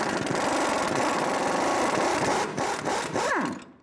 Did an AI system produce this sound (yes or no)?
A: no